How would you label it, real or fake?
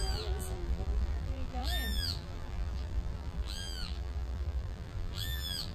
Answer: fake